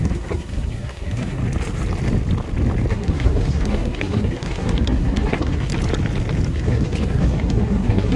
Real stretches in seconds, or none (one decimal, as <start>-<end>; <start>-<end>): 1.4-2.9; 5.7-6.5

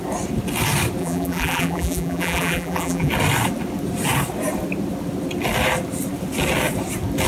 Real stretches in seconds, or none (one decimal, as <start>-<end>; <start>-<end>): 0.0-1.0; 3.1-7.3

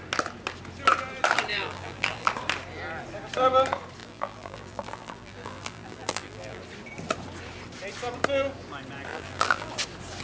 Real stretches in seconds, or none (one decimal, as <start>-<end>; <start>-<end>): 0.0-1.5; 2.3-4.0; 6.6-9.1; 9.7-10.2

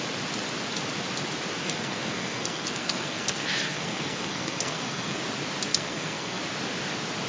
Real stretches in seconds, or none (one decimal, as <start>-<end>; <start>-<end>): 0.0-1.6; 5.2-5.7; 6.4-7.3

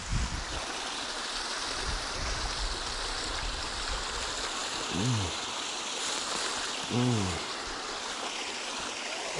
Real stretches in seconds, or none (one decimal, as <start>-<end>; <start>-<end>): 0.0-9.4

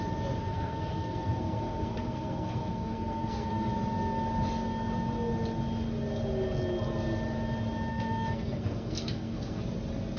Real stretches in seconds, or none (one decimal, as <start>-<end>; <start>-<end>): 0.0-0.4; 3.7-7.9; 9.6-10.2